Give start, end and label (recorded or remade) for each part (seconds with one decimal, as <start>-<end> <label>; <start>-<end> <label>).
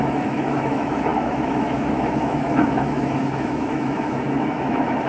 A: 0.0-5.1 remade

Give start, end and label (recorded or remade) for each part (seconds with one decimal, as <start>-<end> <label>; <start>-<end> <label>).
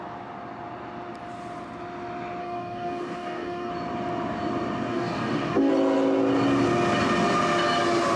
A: 0.0-2.4 recorded; 2.4-3.7 remade; 3.7-4.9 recorded; 4.9-5.7 remade; 5.7-8.2 recorded